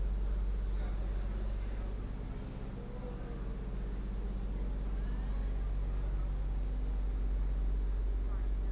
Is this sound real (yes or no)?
yes